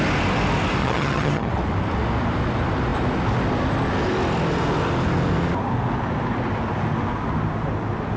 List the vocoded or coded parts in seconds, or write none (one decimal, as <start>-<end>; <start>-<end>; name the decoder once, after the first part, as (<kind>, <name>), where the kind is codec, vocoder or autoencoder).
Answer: 0.8-1.5 (vocoder, HiFi-GAN)